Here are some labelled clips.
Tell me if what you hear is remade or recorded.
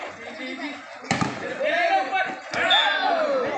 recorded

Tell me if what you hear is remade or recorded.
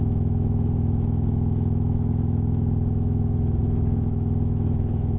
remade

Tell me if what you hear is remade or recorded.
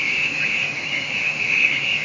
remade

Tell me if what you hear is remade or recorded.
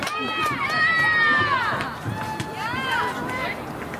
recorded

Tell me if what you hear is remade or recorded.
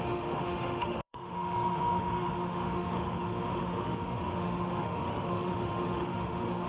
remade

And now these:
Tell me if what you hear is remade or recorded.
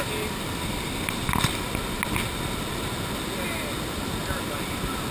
recorded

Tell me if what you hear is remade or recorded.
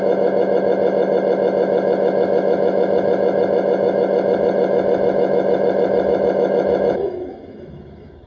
remade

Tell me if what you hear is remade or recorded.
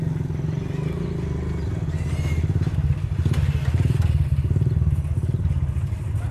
recorded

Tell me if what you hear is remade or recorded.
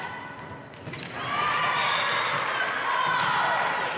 recorded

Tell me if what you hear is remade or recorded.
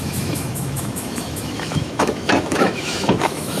remade